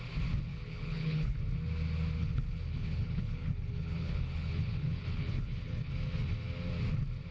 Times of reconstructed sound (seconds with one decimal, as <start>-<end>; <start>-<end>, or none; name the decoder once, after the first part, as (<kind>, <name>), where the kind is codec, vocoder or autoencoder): 0.5-1.4 (codec, HILCodec); 2.2-5.9